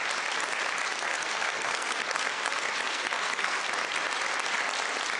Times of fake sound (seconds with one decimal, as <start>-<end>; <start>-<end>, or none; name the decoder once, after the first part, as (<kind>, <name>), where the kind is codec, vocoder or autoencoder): 1.1-3.6 (codec, SNAC)